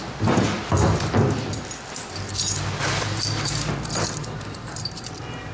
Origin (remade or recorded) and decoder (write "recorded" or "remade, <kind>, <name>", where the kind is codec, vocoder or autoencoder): recorded